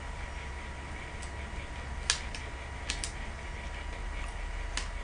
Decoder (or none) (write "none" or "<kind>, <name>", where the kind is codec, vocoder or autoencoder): none